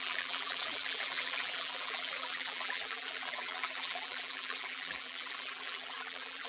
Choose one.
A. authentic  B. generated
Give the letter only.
B